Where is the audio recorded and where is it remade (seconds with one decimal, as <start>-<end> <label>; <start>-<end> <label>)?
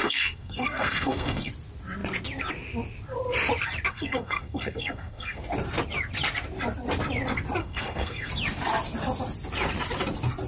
0.0-1.5 remade; 1.5-3.9 recorded; 3.9-5.4 remade; 5.4-7.6 recorded; 7.6-8.3 remade; 8.3-10.5 recorded